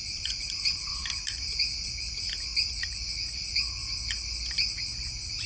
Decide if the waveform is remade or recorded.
remade